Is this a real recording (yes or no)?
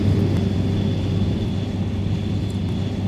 yes